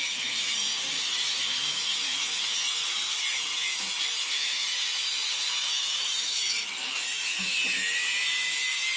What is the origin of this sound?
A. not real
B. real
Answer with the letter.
A